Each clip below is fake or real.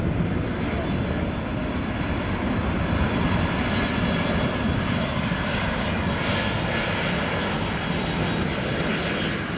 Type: real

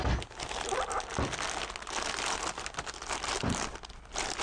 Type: real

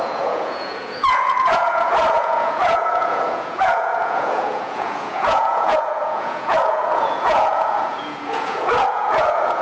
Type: fake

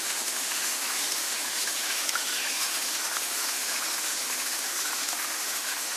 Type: fake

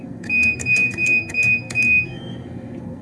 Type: fake